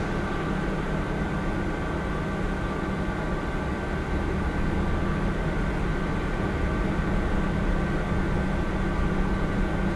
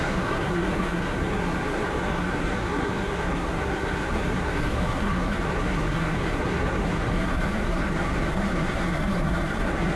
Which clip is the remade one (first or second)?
second